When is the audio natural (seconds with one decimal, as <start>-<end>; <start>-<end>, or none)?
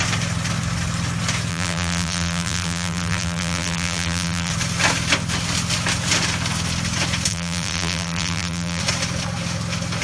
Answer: 0.0-1.5; 4.5-7.3; 8.8-10.0